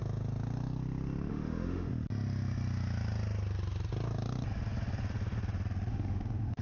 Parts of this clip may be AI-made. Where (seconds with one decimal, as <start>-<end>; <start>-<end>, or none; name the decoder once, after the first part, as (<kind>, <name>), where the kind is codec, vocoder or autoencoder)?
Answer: 1.3-1.9 (autoencoder, DAC-VAE); 5.9-6.6